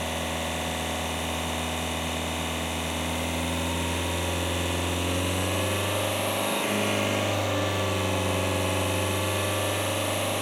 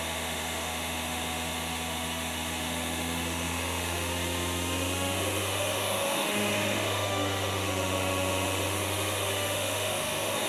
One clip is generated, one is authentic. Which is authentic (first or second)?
first